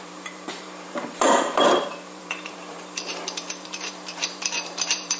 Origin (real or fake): fake